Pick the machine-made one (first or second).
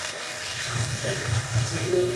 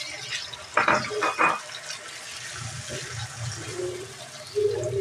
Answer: first